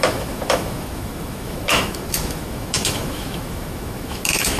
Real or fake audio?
fake